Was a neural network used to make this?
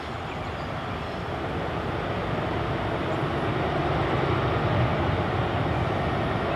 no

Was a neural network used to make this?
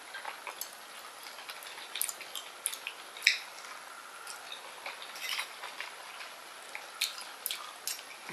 no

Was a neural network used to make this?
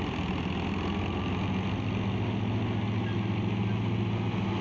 no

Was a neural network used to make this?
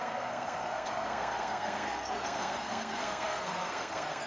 yes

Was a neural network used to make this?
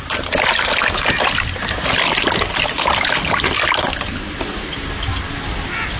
no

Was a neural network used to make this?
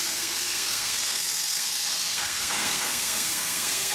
yes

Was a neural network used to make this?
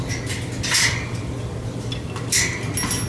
no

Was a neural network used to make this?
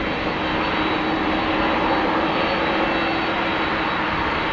no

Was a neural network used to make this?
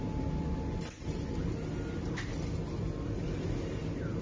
no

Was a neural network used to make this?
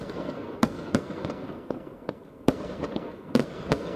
yes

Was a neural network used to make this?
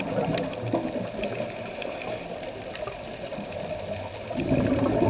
no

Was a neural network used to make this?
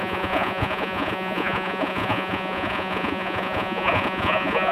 yes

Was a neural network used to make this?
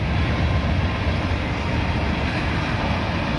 no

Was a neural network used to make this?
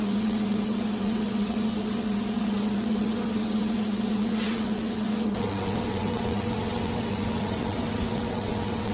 yes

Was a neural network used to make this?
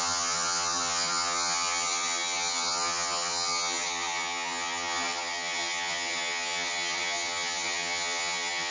yes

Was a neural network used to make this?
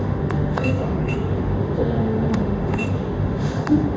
yes